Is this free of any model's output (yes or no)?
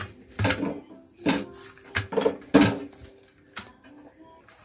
yes